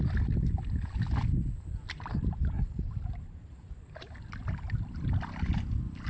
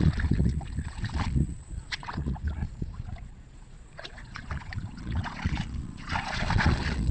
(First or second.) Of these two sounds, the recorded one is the first